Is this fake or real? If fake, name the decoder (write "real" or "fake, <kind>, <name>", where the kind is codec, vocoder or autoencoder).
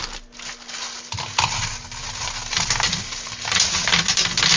real